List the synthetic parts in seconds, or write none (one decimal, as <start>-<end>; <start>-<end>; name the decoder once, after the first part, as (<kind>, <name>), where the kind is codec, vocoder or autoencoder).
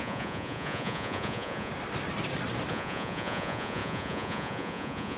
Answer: 0.0-1.7 (vocoder, Vocos); 2.7-5.2